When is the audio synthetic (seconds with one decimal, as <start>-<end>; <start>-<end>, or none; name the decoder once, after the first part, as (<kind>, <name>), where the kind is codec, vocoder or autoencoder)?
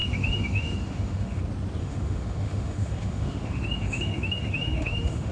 0.0-1.4 (autoencoder, DAC-VAE); 1.8-5.3